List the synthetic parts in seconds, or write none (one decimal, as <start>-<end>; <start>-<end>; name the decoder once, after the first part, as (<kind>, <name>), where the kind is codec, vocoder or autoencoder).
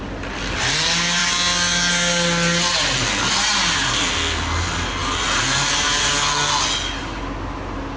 5.0-6.1 (vocoder, BigVGAN v2)